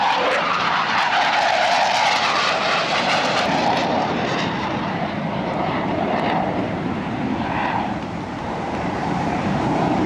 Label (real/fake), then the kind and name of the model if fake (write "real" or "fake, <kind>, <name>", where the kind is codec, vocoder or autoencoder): fake, vocoder, BigVGAN v2